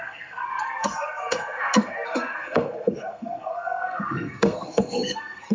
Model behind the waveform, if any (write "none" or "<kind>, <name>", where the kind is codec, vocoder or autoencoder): codec, SNAC